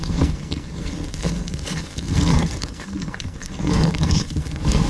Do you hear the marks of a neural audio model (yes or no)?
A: yes